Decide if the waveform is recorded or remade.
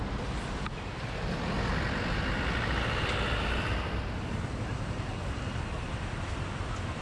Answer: recorded